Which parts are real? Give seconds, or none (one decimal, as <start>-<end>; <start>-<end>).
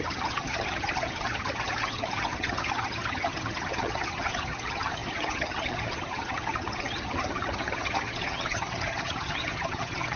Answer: none